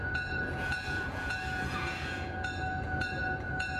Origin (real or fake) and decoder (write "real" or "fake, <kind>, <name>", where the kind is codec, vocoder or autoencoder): fake, vocoder, Vocos